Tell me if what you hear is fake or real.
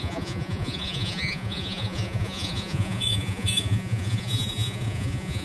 fake